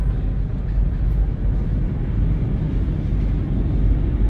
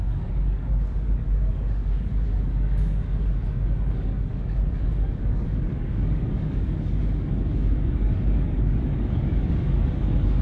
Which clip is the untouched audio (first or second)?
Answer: first